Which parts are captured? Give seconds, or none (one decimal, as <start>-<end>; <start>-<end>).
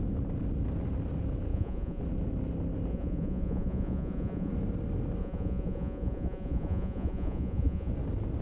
0.0-1.5; 2.0-2.9; 4.5-5.2; 7.9-8.4